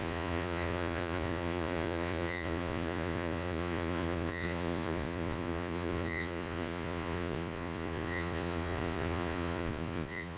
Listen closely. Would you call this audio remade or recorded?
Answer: remade